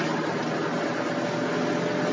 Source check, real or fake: real